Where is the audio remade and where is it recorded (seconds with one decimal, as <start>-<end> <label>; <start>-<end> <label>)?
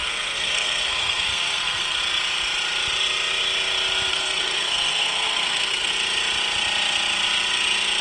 0.0-2.0 remade; 2.0-4.1 recorded; 4.1-5.9 remade; 5.9-8.0 recorded